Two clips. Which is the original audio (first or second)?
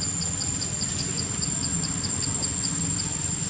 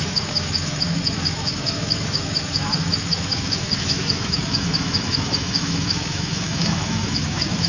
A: first